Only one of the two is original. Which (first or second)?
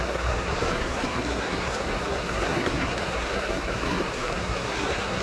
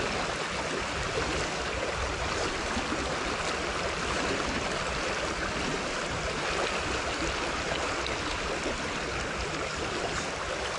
second